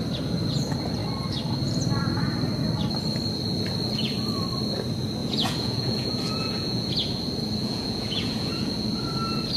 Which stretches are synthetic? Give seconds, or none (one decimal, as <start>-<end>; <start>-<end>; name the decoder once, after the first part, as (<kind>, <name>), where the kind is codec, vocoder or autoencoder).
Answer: 5.2-6.9 (vocoder, Vocos); 7.6-8.7